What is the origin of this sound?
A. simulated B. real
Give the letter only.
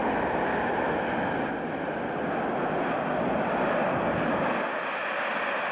B